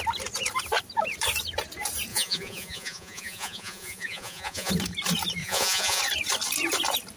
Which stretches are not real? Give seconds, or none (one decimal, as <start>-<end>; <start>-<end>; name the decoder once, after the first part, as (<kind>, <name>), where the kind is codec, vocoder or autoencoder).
2.1-4.7 (vocoder, Vocos); 5.4-6.0